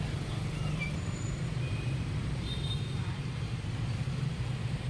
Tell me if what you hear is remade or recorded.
remade